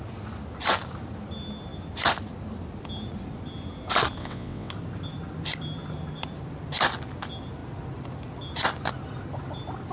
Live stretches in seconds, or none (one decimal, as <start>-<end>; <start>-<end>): 0.0-4.2; 4.7-9.9